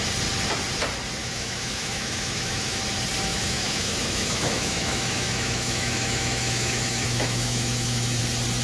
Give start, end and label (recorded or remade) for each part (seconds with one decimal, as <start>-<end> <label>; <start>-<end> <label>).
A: 0.0-1.2 recorded; 1.2-2.8 remade; 2.8-3.3 recorded; 3.3-8.2 remade; 8.2-8.6 recorded